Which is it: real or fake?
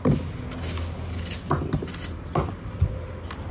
real